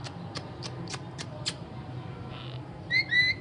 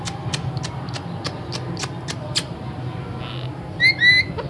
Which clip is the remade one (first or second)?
first